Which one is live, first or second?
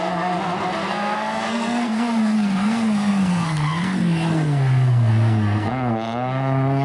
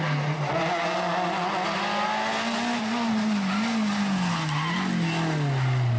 second